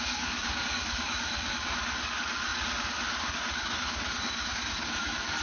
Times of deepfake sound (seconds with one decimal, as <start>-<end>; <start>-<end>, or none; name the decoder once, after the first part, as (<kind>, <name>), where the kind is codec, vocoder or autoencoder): 0.0-5.4 (codec, DAC)

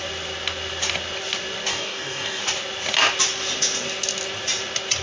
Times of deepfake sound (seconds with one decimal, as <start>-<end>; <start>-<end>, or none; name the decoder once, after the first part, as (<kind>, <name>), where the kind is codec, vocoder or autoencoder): 1.7-2.4 (codec, DAC)

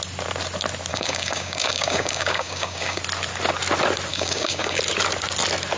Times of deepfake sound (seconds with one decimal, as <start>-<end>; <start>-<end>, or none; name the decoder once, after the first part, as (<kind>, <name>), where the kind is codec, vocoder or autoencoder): 0.9-3.0 (codec, DAC); 4.1-4.8

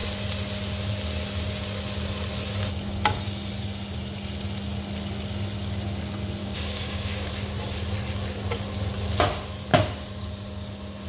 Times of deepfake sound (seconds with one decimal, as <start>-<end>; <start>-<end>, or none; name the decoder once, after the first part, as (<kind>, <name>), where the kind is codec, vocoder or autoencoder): 6.4-7.3 (codec, DAC)

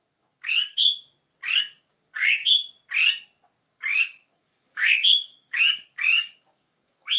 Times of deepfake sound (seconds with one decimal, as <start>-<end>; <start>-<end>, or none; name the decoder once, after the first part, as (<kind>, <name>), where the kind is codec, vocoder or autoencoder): 0.0-0.8 (codec, DAC); 1.6-2.4; 3.6-7.2

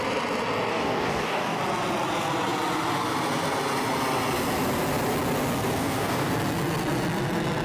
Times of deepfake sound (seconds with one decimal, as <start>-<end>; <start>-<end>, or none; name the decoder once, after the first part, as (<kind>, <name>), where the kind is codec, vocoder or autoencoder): 0.7-1.6 (codec, DAC); 5.8-6.3

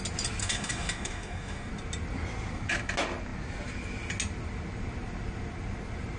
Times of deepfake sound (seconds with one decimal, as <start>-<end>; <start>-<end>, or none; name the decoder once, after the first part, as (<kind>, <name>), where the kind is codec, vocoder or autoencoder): 0.4-1.7 (codec, DAC)

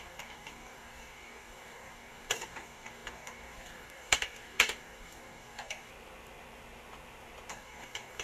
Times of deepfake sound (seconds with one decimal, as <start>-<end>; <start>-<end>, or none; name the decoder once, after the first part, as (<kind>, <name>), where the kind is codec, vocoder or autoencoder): 0.0-5.9 (codec, DAC); 7.5-8.2